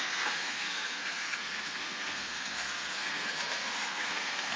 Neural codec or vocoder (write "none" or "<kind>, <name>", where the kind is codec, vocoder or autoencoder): codec, SNAC